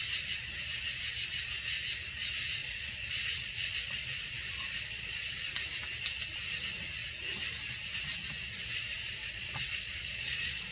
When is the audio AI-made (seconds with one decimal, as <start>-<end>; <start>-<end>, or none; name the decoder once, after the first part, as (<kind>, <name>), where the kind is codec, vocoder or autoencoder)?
2.6-5.3 (vocoder, Vocos); 9.2-10.7